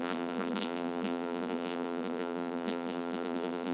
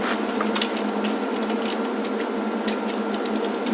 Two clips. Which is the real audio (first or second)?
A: second